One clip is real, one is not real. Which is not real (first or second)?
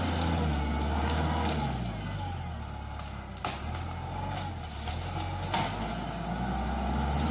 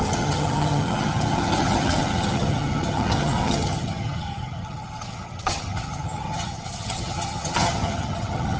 second